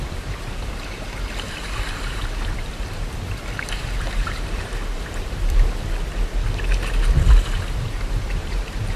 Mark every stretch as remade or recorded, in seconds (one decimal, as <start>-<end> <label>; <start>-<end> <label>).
0.0-6.3 remade; 6.3-7.7 recorded; 7.7-9.0 remade

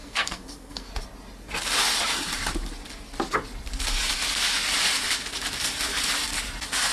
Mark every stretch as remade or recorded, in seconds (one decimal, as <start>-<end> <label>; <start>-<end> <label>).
0.0-0.9 remade; 0.9-6.9 recorded

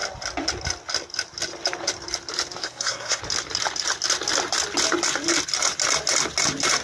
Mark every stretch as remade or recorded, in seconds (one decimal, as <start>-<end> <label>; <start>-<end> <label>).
0.0-2.6 recorded; 2.6-3.2 remade; 3.2-6.8 recorded

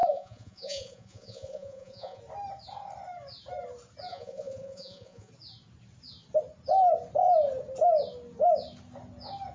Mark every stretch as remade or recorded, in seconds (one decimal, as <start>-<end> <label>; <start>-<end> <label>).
0.0-2.2 remade; 2.2-4.1 recorded; 4.1-5.3 remade; 5.3-9.5 recorded

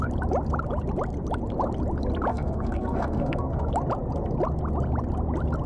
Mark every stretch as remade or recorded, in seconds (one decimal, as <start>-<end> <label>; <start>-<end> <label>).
0.0-2.3 recorded; 2.3-3.7 remade; 3.7-5.7 recorded

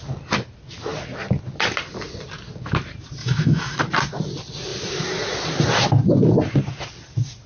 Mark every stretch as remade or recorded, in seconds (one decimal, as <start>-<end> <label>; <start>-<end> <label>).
0.0-3.2 recorded; 3.2-3.8 remade; 3.8-7.5 recorded

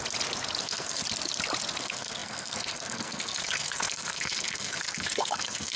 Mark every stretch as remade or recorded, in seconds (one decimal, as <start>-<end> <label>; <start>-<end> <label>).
0.0-0.6 recorded; 0.6-1.0 remade; 1.0-1.8 recorded; 1.8-5.8 remade